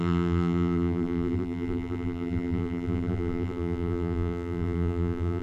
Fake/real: fake